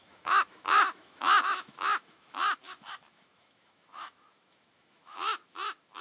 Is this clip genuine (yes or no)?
no